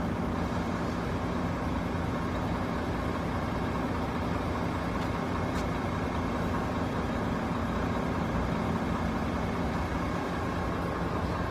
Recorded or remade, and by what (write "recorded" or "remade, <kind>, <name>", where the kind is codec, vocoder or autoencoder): recorded